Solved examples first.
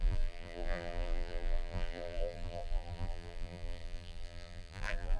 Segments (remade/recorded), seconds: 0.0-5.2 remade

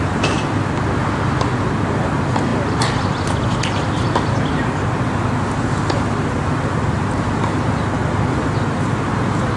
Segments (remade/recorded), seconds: 0.0-9.6 recorded

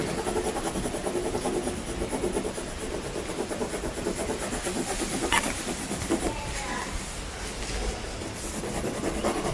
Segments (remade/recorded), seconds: 0.0-1.0 recorded; 1.0-2.4 remade; 2.4-9.5 recorded